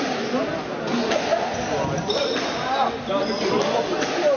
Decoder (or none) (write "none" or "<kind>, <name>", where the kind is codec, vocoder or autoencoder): none